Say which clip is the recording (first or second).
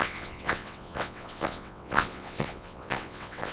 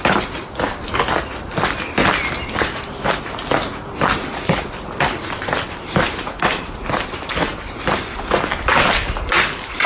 second